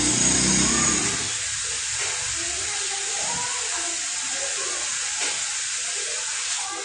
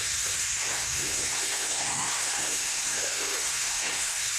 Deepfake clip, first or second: second